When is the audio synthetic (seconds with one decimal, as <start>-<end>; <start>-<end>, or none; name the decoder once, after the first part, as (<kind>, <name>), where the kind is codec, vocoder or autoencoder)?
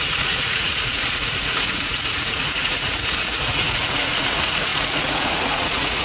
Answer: 0.0-6.0 (vocoder, Vocos)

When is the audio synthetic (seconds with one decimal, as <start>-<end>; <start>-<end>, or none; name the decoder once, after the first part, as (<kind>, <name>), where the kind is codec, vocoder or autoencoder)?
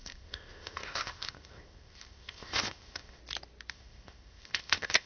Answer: 0.0-3.2 (codec, ZipCodec); 3.7-5.1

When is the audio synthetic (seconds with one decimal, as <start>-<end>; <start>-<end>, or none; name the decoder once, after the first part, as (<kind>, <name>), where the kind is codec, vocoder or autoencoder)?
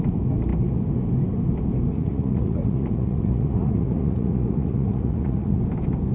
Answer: 1.9-5.6 (vocoder, Vocos)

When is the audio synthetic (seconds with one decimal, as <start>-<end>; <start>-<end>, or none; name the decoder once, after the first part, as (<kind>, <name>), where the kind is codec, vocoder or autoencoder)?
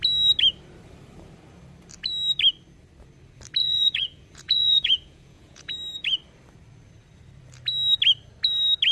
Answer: 3.6-5.7 (vocoder, Vocos)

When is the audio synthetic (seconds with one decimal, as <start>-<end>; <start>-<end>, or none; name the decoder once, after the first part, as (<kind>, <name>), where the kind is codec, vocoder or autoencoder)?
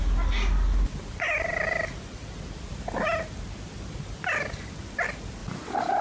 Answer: 1.5-2.3 (vocoder, BigVGAN v2)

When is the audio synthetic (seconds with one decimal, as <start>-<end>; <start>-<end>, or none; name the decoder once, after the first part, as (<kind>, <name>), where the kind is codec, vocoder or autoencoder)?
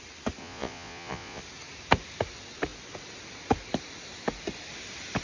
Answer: 0.4-1.4 (vocoder, Vocos)